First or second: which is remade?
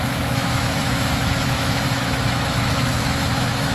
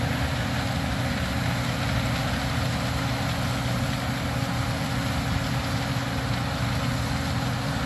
first